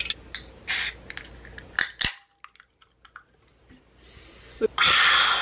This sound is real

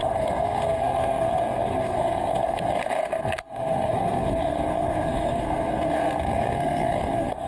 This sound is fake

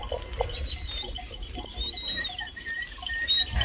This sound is real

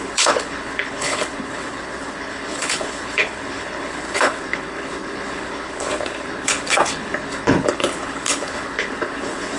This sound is fake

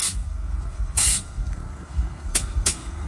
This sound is fake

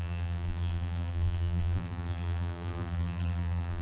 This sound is fake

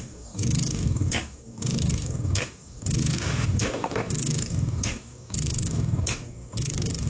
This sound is fake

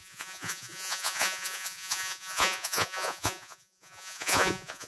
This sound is fake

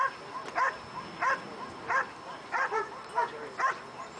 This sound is real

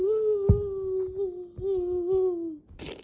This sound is real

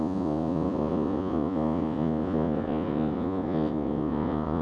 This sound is fake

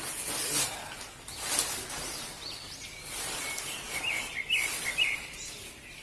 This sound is real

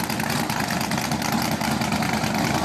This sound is real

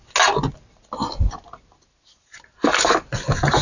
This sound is real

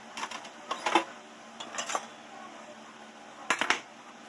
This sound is real